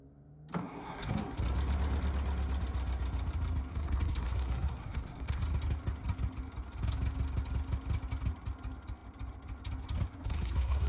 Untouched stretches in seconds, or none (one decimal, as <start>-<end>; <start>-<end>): 0.0-0.6; 1.4-3.7; 5.4-10.1